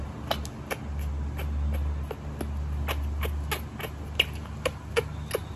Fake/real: real